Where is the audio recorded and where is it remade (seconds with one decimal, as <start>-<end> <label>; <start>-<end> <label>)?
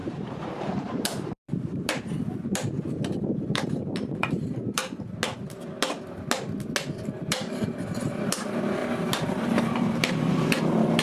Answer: 0.0-4.8 remade; 4.8-7.3 recorded; 7.3-11.0 remade